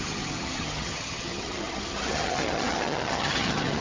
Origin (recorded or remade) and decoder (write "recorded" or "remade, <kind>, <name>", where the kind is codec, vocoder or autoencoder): remade, vocoder, HiFi-GAN